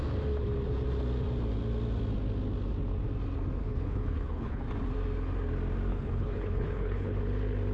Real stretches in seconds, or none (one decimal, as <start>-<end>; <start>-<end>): 0.0-3.6; 4.6-5.9; 7.2-7.7